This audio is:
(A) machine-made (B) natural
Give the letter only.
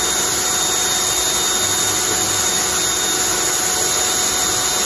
B